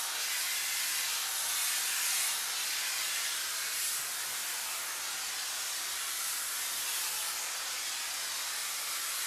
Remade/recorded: recorded